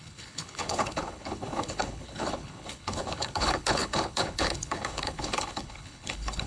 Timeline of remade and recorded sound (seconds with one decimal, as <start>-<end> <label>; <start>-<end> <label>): 0.0-6.5 remade